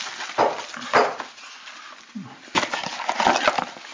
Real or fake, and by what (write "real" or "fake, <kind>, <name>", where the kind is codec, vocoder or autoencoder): real